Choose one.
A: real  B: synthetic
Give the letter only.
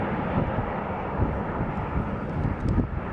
A